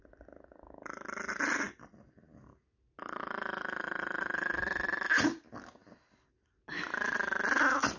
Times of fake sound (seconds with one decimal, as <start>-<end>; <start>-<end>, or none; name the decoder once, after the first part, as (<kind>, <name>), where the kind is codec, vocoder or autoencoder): none